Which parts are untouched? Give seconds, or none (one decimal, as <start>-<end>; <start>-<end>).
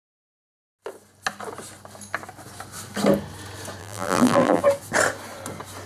0.0-3.8; 4.6-5.9